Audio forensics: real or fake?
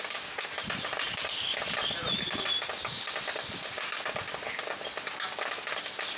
real